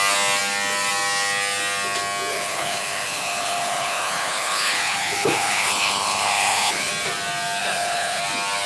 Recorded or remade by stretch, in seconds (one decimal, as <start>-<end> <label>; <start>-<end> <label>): 0.0-2.3 recorded; 2.3-6.9 remade; 6.9-7.6 recorded; 7.6-8.2 remade; 8.2-8.7 recorded